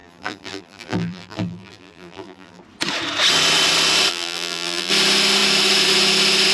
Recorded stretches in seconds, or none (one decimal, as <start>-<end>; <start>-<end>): 2.6-4.1; 4.9-6.5